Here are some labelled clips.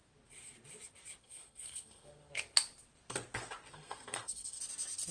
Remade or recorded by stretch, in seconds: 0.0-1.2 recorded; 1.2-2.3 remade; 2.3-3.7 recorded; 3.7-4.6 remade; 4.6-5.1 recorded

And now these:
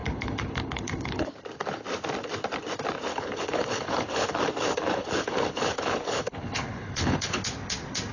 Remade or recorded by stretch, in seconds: 0.0-1.3 remade; 1.3-3.1 recorded; 3.1-7.4 remade; 7.4-8.1 recorded

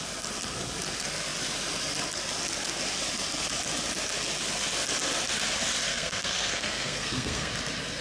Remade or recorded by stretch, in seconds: 0.0-5.9 recorded; 5.9-7.5 remade; 7.5-8.0 recorded

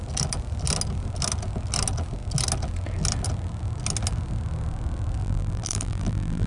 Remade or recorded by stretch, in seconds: 0.0-5.2 recorded; 5.2-6.5 remade

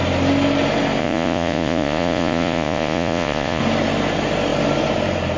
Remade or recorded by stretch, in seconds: 0.0-1.0 recorded; 1.0-3.6 remade; 3.6-5.4 recorded

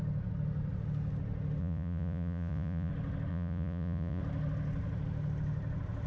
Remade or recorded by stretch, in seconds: 0.0-1.6 recorded; 1.6-2.9 remade; 2.9-3.3 recorded; 3.3-4.2 remade; 4.2-6.1 recorded

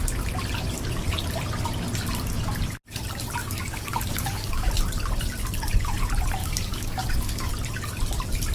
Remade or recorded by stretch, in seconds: 0.0-3.4 recorded; 3.4-4.7 remade; 4.7-6.4 recorded; 6.4-7.5 remade; 7.5-8.5 recorded

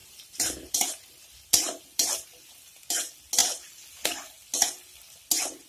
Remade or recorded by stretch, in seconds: 0.0-5.7 recorded